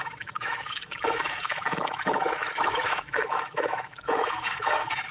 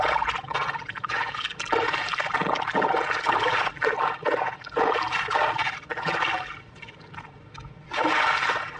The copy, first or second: first